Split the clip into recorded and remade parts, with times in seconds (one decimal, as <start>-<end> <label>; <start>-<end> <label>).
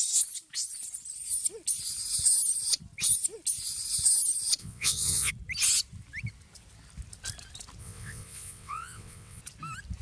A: 0.0-4.6 recorded; 4.6-5.3 remade; 5.3-7.8 recorded; 7.8-9.4 remade; 9.4-10.0 recorded